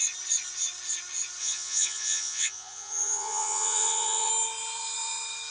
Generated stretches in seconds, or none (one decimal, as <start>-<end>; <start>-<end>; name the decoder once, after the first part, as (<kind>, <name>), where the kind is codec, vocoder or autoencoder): 1.4-4.3 (vocoder, Vocos)